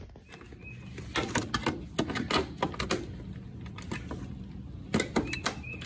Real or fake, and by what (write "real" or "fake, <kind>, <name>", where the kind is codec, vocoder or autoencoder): real